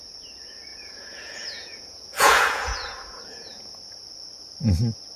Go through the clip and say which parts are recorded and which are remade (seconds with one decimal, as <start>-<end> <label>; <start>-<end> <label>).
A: 0.0-0.7 recorded; 0.7-3.8 remade; 3.8-5.2 recorded